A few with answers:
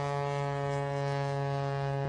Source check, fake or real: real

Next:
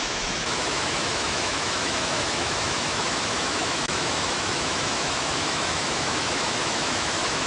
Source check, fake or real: fake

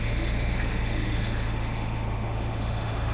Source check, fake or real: fake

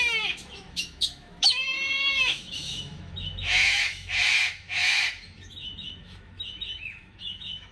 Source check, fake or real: fake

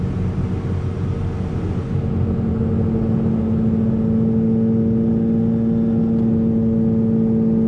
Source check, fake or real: real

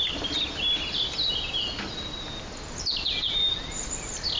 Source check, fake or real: real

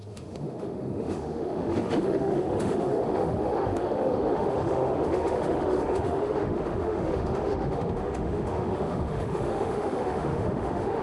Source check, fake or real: fake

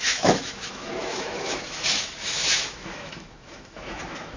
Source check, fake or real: fake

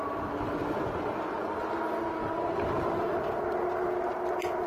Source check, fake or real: real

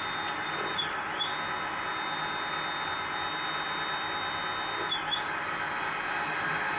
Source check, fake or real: real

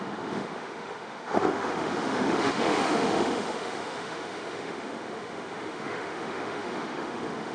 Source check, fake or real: fake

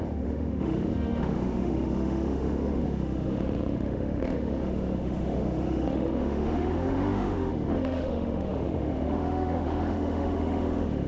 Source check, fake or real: fake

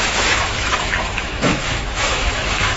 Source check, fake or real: fake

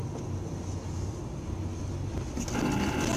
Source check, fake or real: real